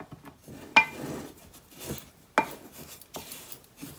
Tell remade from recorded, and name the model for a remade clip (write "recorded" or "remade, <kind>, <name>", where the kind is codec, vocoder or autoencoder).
recorded